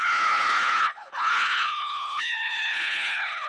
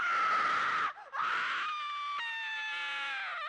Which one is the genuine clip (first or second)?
second